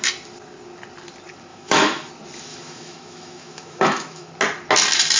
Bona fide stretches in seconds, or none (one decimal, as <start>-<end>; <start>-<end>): 0.0-1.5; 2.1-2.5; 4.3-5.2